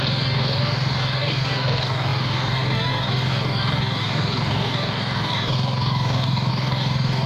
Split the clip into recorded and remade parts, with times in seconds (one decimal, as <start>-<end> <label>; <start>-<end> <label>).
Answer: 0.0-7.3 remade